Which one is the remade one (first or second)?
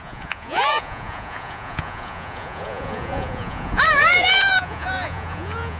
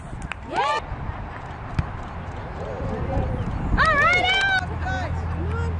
first